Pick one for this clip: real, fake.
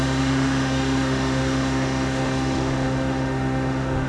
fake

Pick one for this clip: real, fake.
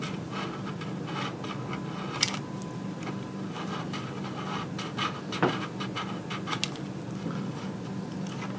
real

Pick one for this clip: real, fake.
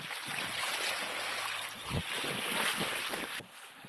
real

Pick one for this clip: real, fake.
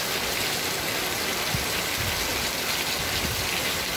real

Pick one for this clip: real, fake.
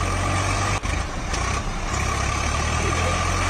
real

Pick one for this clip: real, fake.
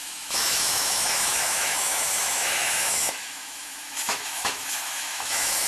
fake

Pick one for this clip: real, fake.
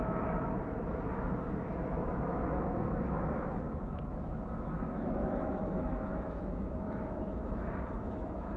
fake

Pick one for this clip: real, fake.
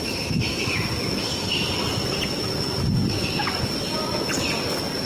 real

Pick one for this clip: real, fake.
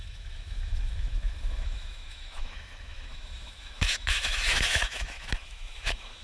fake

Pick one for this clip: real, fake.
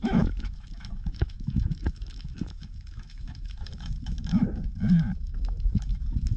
fake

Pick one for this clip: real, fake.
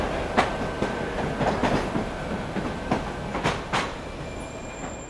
real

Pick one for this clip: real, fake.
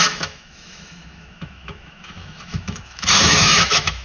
fake